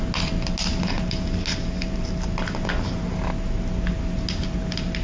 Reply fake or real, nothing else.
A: real